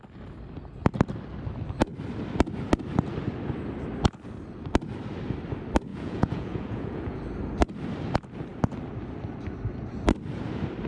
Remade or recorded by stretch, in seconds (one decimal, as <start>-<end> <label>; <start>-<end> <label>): 0.0-5.9 recorded; 5.9-7.2 remade; 7.2-10.9 recorded